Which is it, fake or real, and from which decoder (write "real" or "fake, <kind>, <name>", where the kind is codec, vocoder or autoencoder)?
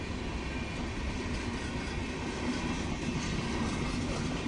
real